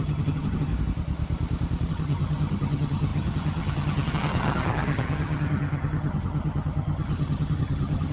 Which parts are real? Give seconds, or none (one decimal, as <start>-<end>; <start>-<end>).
0.7-1.9